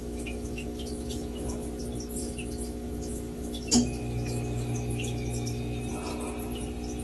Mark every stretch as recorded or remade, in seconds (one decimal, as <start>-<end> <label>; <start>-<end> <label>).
0.0-1.8 remade; 1.8-2.2 recorded; 2.2-5.9 remade; 5.9-7.0 recorded